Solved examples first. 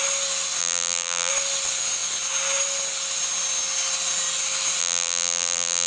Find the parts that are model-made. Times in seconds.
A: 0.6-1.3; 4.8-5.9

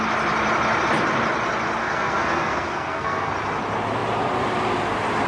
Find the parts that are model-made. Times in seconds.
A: 1.8-3.3